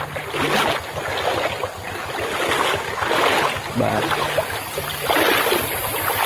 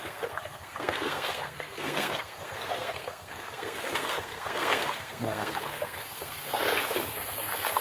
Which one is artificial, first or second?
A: second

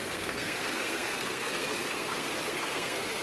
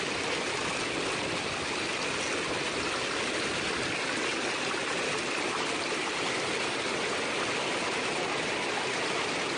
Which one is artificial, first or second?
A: first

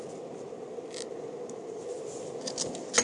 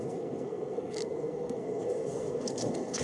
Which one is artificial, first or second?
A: second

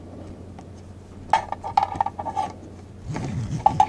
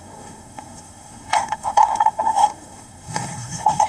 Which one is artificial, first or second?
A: second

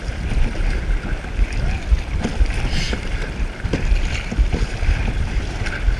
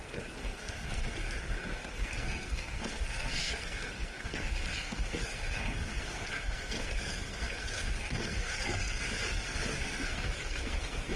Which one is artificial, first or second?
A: second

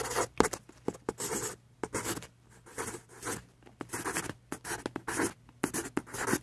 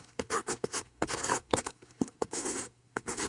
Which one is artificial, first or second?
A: second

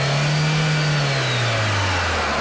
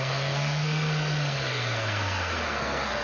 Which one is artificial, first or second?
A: second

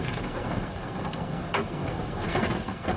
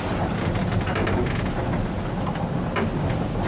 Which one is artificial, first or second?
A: first